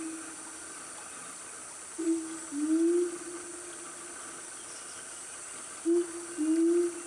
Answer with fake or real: real